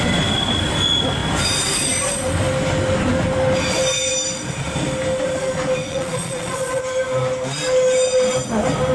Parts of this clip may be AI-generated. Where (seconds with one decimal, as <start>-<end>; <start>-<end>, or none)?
5.9-6.8